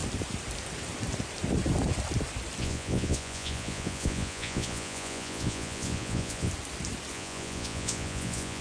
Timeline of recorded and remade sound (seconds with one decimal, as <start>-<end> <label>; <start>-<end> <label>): 0.0-2.6 recorded; 2.6-6.5 remade; 6.5-7.1 recorded; 7.1-8.6 remade